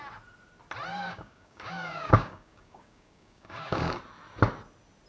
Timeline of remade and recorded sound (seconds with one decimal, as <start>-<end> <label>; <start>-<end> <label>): 0.0-0.9 recorded; 0.9-4.0 remade; 4.0-5.1 recorded